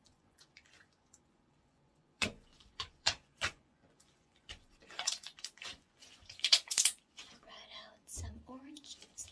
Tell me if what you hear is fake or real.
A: fake